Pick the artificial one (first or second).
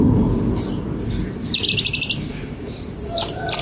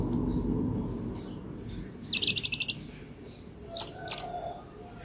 first